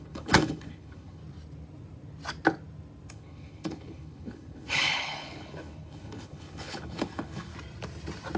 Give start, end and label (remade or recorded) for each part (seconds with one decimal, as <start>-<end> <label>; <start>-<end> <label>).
0.0-1.2 remade; 1.2-3.1 recorded; 3.1-7.5 remade; 7.5-8.4 recorded